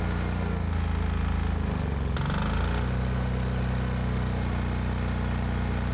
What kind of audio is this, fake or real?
real